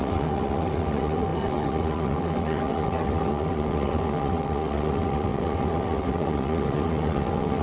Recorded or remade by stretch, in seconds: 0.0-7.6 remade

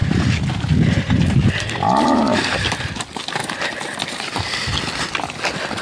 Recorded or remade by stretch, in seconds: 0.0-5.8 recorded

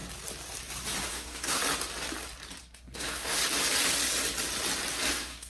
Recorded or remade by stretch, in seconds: 0.0-1.1 recorded; 1.1-1.6 remade; 1.6-2.6 recorded; 2.6-3.4 remade; 3.4-5.1 recorded; 5.1-5.5 remade